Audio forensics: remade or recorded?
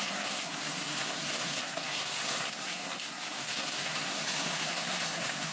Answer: remade